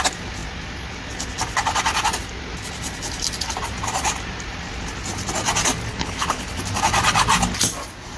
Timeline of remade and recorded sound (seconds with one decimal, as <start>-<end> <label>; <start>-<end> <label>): 0.0-5.9 recorded; 5.9-6.5 remade; 6.5-8.2 recorded